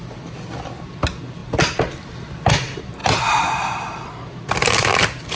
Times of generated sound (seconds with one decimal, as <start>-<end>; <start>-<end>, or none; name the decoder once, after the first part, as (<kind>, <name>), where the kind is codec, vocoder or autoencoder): none